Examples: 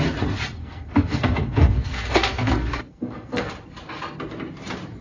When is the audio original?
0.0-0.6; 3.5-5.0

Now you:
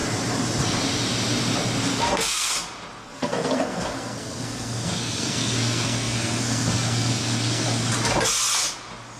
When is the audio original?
0.0-1.9; 2.5-3.0; 7.9-9.2